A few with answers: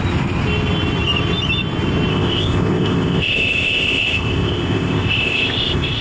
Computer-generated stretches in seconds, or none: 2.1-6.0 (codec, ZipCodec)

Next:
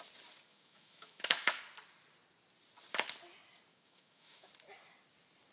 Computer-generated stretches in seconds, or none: 0.5-1.6 (autoencoder, DAC-VAE); 3.7-4.5

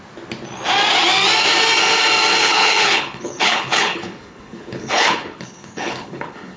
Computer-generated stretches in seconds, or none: 2.4-6.6 (codec, HILCodec)

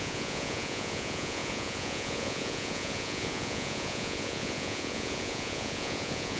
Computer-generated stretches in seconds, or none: 0.0-6.4 (vocoder, Vocos)

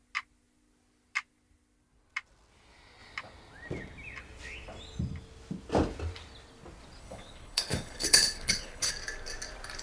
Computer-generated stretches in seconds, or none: 7.0-8.9 (codec, HILCodec)

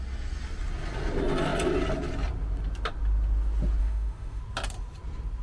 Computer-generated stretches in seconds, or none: 3.8-4.4 (autoencoder, DAC-VAE)

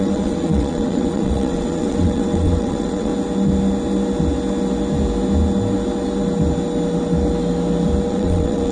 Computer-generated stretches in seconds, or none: 0.0-3.1 (vocoder, WaveNeXt); 8.1-8.7

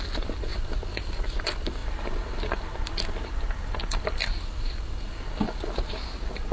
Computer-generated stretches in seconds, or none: none